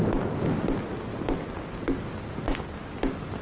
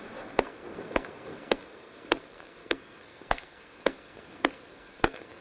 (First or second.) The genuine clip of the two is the first